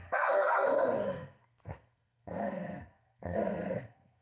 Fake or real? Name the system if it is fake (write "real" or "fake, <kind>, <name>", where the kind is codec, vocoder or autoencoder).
fake, codec, SNAC